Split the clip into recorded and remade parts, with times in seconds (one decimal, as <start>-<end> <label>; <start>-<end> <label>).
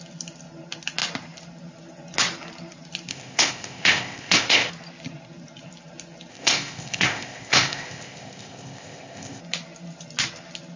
0.0-3.1 recorded; 3.1-4.7 remade; 4.7-6.3 recorded; 6.3-9.4 remade; 9.4-10.8 recorded